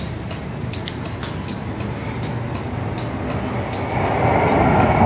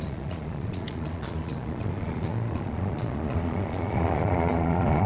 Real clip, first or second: first